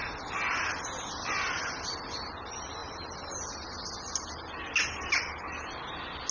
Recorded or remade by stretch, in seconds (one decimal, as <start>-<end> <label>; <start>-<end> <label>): 0.0-6.3 recorded